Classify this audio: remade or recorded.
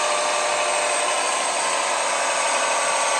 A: recorded